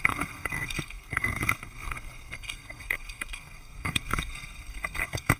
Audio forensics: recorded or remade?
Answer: remade